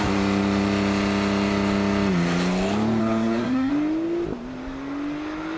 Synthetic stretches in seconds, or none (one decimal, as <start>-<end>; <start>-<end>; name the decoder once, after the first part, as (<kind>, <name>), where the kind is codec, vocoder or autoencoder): 3.0-3.7 (codec, SNAC)